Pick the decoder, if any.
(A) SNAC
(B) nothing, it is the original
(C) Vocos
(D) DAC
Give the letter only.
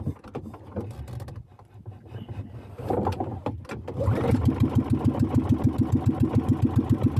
B